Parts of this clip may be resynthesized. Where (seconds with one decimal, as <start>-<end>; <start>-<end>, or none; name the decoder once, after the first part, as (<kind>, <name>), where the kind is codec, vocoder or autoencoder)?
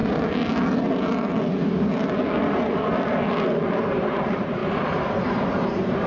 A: 3.7-4.6 (vocoder, BigVGAN v2); 5.6-6.1